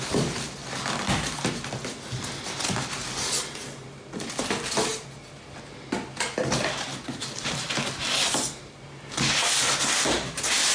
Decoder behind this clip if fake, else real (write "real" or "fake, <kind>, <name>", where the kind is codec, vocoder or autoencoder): real